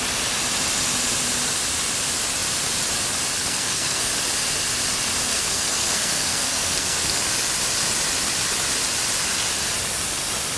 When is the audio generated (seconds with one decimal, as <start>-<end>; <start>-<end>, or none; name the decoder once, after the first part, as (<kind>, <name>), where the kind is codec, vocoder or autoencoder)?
3.4-4.1 (codec, SNAC); 5.3-7.2